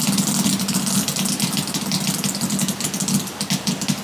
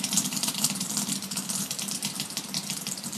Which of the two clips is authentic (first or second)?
first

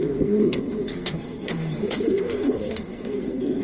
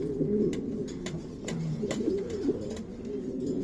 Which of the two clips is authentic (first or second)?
second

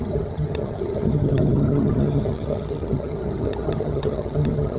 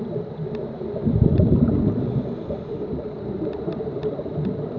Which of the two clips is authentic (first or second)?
second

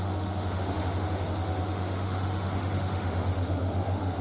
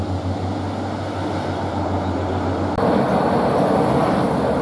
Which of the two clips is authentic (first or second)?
second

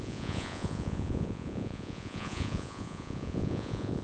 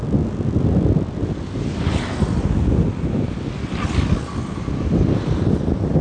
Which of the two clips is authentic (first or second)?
second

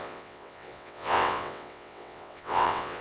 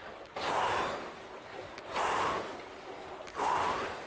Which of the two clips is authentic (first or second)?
second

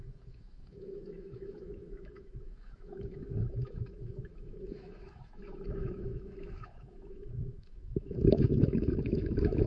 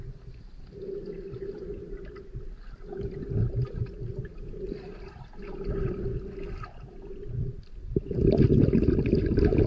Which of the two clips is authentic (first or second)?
second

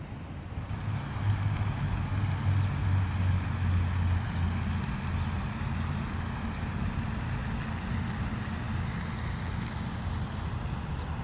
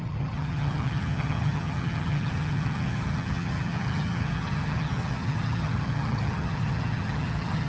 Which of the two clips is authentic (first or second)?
first